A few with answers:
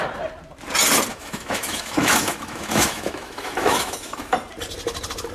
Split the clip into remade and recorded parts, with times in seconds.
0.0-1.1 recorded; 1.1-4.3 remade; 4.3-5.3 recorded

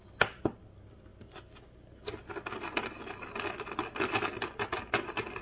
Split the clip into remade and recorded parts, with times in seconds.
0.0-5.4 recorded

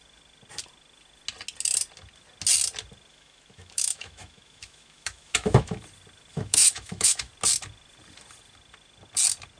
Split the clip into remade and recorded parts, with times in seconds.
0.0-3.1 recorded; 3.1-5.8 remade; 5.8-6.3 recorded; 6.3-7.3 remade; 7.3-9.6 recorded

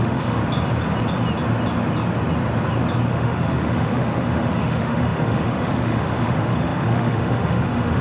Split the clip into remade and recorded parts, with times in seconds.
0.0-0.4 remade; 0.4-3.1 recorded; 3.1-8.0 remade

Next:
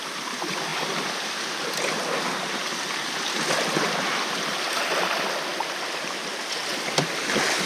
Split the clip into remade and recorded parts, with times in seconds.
0.0-7.7 recorded